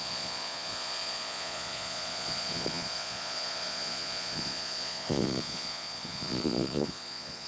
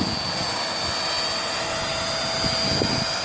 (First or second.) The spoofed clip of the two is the first